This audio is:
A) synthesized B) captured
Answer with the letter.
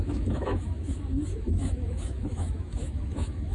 A